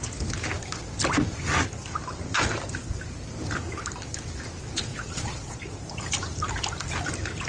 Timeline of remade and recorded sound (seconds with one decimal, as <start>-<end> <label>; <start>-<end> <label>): 0.0-4.9 recorded; 4.9-5.6 remade; 5.6-7.5 recorded